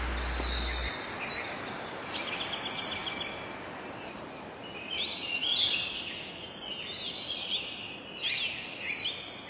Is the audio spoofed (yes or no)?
no